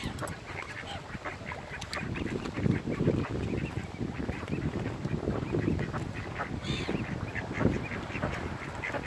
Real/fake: real